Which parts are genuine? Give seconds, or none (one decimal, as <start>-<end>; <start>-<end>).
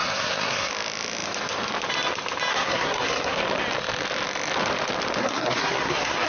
0.7-2.5; 3.4-5.2